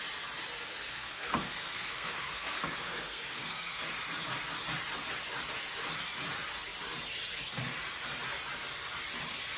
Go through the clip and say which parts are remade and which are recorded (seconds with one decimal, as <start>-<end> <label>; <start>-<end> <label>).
0.0-0.7 recorded; 0.7-3.8 remade; 3.8-9.6 recorded